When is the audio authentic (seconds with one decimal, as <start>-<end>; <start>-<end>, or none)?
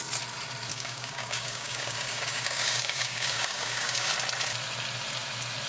0.0-0.7; 4.1-5.7